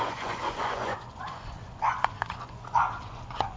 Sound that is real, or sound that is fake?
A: fake